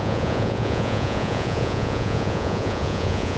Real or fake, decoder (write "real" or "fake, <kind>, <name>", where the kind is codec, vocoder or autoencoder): fake, vocoder, Vocos